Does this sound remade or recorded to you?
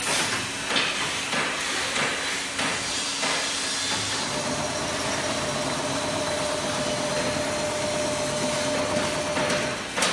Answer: recorded